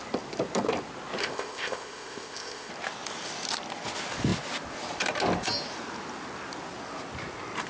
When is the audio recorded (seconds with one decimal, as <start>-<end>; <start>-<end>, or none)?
0.0-1.2; 2.7-7.7